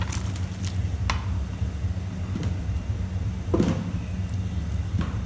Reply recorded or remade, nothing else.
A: recorded